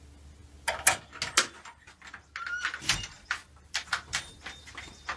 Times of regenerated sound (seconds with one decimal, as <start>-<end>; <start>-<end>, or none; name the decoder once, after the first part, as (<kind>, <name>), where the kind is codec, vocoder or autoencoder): 3.4-4.6 (vocoder, BigVGAN v2)